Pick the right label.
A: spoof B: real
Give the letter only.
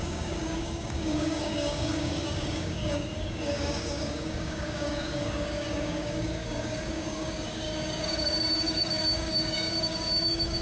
A